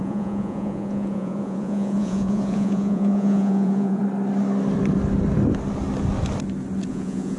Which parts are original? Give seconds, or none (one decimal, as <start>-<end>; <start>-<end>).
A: 4.0-6.9